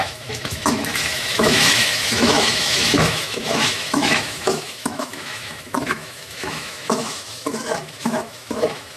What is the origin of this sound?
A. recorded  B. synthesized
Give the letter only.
B